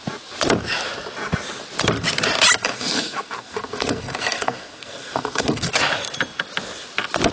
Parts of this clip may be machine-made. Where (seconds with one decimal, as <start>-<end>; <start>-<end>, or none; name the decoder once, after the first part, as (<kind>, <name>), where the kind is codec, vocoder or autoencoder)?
2.7-5.7 (codec, SNAC)

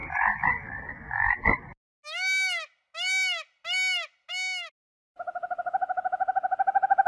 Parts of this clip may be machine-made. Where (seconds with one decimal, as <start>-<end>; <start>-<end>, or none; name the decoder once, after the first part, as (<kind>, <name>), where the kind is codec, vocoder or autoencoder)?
none

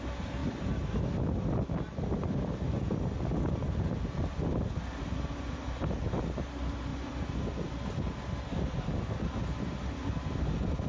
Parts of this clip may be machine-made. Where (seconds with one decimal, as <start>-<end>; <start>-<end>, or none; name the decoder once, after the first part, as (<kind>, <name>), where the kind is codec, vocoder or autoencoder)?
none

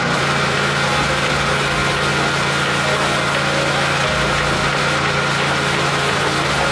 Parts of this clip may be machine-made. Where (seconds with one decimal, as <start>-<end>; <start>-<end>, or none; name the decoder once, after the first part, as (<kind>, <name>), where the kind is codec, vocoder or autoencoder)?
none